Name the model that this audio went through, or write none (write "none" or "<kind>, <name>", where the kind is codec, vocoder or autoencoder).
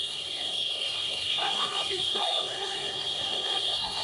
codec, SNAC